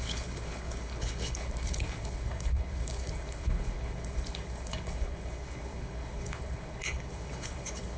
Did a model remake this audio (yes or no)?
yes